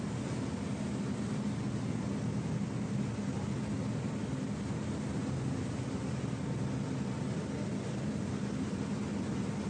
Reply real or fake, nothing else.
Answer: real